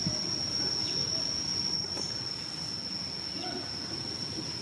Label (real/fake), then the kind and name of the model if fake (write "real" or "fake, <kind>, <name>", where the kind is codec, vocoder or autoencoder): real